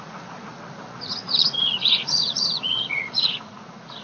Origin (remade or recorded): remade